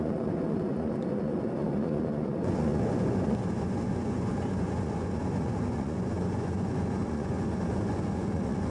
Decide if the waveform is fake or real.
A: fake